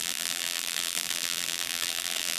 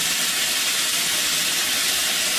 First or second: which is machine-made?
first